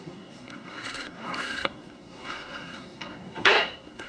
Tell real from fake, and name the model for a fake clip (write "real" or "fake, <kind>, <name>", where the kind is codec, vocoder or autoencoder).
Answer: fake, codec, SNAC